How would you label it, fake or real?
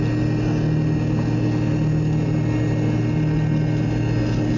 real